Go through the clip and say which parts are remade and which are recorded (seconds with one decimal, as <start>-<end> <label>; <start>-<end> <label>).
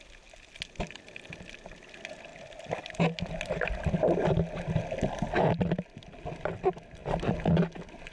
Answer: 0.0-8.1 recorded